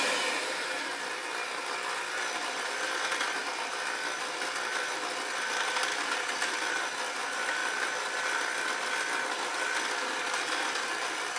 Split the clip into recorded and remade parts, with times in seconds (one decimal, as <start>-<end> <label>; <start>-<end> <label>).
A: 0.0-7.6 recorded; 7.6-8.2 remade; 8.2-11.4 recorded